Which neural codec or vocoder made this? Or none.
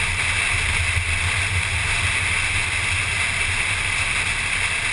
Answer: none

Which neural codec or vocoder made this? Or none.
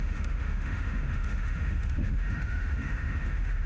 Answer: autoencoder, DAC-VAE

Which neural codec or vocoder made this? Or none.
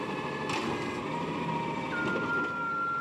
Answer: none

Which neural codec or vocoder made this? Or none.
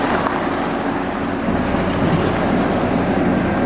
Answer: none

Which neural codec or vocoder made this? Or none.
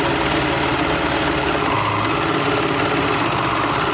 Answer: none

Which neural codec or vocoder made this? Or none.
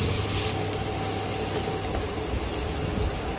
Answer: none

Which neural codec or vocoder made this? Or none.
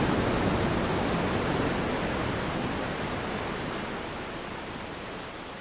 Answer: none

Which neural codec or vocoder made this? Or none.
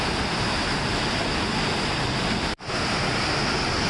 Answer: none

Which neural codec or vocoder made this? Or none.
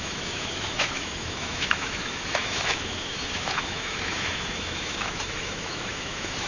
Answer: autoencoder, DAC-VAE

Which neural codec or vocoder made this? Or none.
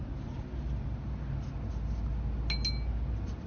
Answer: none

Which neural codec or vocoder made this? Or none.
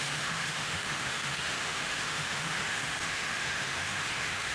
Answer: autoencoder, DAC-VAE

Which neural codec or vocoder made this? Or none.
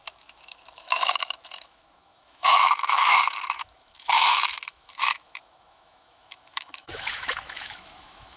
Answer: autoencoder, DAC-VAE